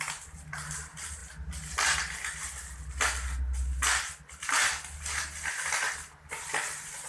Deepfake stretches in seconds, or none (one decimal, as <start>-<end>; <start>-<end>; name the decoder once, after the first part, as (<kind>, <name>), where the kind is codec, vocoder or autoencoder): none